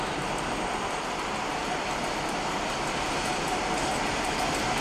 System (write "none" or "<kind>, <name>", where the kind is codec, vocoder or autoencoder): vocoder, BigVGAN v2